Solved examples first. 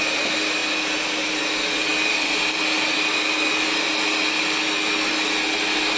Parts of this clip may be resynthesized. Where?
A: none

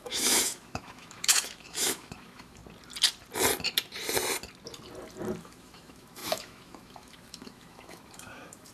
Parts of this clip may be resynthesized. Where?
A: 0.0-2.6 (autoencoder, DAC-VAE); 5.4-8.7